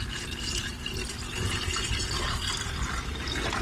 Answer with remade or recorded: recorded